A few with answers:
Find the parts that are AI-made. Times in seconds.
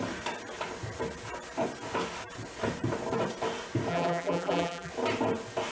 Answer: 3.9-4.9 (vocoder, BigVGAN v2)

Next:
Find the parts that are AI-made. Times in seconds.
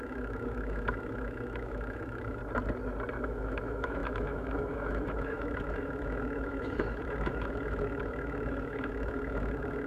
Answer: 0.0-2.4 (autoencoder, DAC-VAE); 3.2-9.9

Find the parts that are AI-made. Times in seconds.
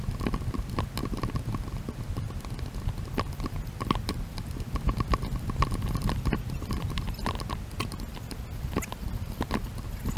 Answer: none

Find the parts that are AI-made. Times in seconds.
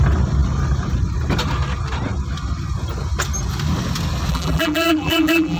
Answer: 4.3-5.6 (vocoder, BigVGAN v2)